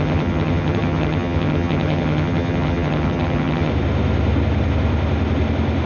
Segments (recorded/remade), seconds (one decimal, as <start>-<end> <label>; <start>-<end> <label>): 0.0-3.7 remade; 3.7-5.9 recorded